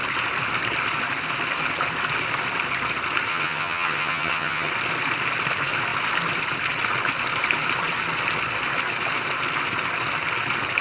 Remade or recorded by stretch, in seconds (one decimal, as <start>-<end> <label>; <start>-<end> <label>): 0.0-3.3 recorded; 3.3-4.7 remade; 4.7-10.8 recorded